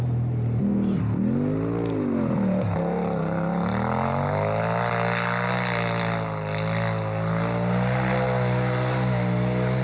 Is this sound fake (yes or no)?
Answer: no